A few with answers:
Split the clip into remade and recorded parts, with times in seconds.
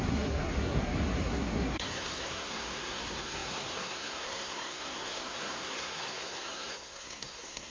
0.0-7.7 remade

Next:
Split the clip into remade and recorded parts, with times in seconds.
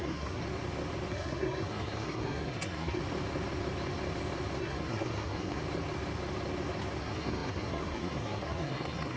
0.0-0.4 remade; 0.4-1.1 recorded; 1.1-3.0 remade; 3.0-4.6 recorded; 4.6-5.6 remade; 5.6-7.0 recorded; 7.0-9.2 remade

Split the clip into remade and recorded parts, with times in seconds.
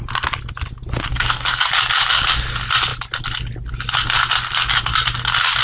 0.0-1.1 recorded; 1.1-1.7 remade; 1.7-5.6 recorded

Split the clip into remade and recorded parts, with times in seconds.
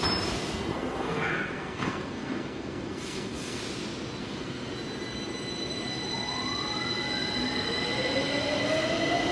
0.0-0.7 recorded; 0.7-3.6 remade; 3.6-4.2 recorded; 4.2-4.7 remade; 4.7-9.3 recorded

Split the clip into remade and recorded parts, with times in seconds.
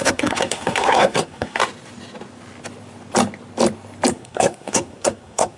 0.0-1.6 remade; 1.6-4.1 recorded; 4.1-5.6 remade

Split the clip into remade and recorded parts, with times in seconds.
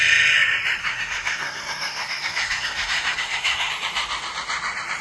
0.0-0.8 recorded; 0.8-3.7 remade; 3.7-5.0 recorded